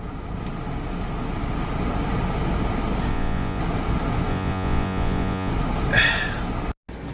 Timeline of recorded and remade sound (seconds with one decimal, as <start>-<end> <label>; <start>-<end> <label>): 0.0-3.1 recorded; 3.1-3.6 remade; 3.6-4.3 recorded; 4.3-5.5 remade; 5.5-7.1 recorded